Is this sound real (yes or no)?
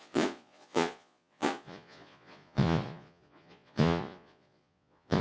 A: no